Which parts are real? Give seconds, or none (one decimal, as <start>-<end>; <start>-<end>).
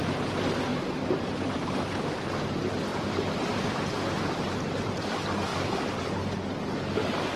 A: 0.0-0.7; 1.3-2.9; 4.9-5.5; 6.0-7.4